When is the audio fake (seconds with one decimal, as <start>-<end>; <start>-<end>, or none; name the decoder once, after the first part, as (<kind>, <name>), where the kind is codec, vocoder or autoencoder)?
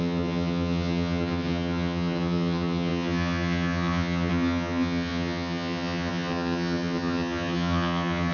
0.0-8.3 (vocoder, HiFi-GAN)